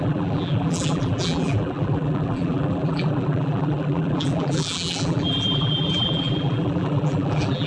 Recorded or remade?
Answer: remade